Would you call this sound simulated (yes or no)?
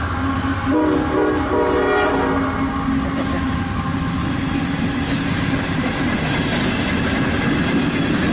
no